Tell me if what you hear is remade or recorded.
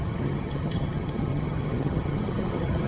remade